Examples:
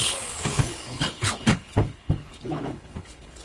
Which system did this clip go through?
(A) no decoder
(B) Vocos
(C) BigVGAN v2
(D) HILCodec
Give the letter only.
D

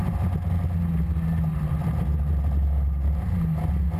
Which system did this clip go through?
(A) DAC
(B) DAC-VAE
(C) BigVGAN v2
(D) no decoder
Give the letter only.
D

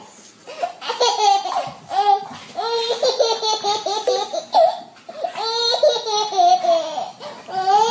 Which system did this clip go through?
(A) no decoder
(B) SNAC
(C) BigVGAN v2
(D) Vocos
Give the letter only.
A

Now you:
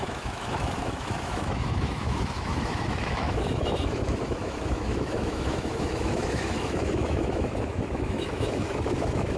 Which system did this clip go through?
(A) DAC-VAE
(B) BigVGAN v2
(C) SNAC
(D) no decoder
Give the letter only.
A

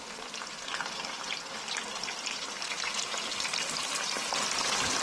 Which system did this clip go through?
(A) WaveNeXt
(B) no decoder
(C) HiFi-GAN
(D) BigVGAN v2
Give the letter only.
B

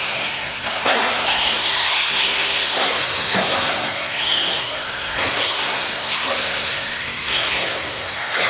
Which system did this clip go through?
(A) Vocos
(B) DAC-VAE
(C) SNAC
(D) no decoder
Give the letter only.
C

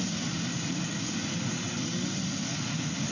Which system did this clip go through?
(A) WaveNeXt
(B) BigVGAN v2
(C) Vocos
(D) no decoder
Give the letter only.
D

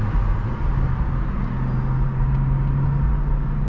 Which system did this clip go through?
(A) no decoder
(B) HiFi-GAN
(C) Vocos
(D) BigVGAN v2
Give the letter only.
A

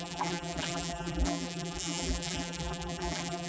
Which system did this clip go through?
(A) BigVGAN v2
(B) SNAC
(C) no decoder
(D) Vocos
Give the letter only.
A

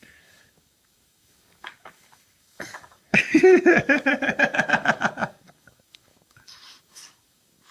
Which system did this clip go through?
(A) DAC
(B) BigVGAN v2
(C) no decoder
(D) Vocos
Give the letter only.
A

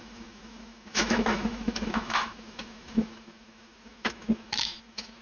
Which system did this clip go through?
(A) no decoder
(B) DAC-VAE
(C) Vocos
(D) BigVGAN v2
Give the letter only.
B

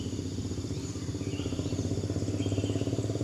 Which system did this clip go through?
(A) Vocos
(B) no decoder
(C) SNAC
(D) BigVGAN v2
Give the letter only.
B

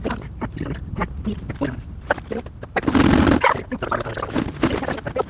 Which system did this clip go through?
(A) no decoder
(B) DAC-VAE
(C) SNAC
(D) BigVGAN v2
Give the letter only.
A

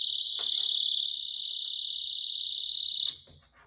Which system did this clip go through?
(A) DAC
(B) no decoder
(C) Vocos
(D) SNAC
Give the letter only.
B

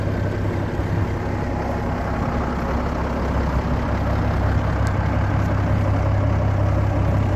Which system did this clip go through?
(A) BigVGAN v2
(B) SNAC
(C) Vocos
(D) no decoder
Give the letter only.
D